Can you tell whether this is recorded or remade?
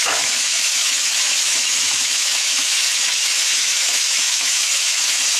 remade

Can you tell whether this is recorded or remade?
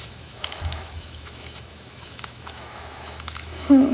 remade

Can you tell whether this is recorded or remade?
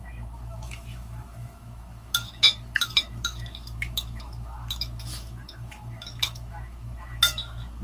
remade